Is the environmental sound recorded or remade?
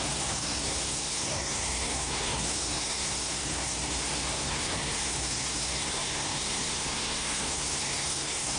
remade